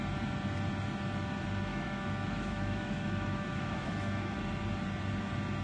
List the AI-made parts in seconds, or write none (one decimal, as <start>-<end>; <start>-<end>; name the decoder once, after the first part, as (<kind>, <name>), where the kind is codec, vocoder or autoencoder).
1.7-4.4 (autoencoder, DAC-VAE)